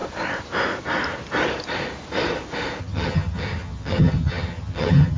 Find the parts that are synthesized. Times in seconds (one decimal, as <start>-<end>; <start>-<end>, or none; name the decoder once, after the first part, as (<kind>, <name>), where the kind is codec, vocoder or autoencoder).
2.8-5.2 (vocoder, HiFi-GAN)